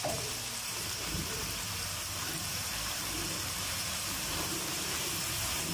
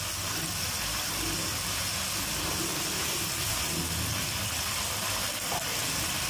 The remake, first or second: first